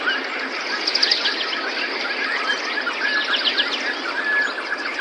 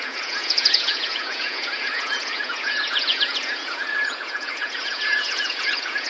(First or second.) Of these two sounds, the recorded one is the first